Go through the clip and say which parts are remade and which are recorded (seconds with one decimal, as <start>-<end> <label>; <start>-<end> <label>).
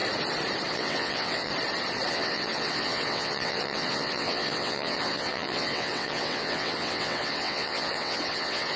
0.0-0.7 recorded; 0.7-1.5 remade; 1.5-2.1 recorded; 2.1-8.8 remade